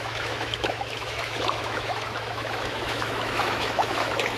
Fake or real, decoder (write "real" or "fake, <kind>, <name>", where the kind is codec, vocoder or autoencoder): fake, autoencoder, DAC-VAE